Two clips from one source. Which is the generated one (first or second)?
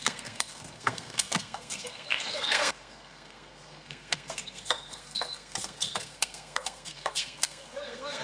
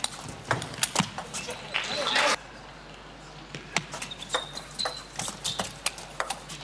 first